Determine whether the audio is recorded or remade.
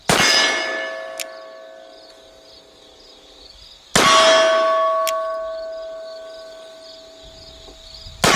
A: recorded